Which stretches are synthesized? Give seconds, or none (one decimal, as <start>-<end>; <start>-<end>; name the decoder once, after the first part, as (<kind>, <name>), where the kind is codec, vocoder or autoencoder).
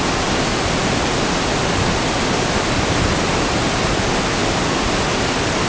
none